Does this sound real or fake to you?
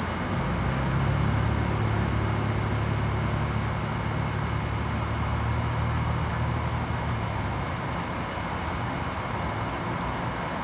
real